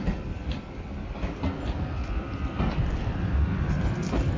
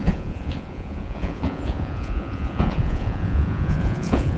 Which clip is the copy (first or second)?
second